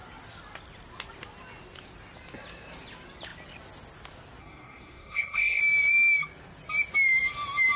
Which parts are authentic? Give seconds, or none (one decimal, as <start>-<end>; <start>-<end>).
0.0-4.4; 5.6-7.8